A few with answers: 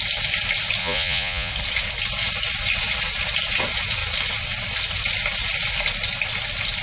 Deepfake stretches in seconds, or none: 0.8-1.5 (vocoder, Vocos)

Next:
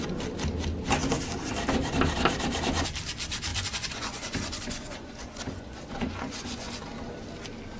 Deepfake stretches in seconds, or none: 3.5-6.8 (vocoder, Vocos)

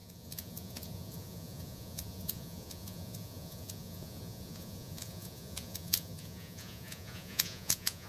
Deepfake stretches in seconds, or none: 0.0-8.1 (vocoder, Vocos)

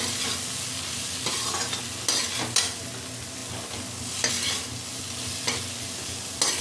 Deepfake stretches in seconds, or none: none